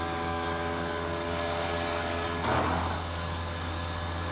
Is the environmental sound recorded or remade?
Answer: remade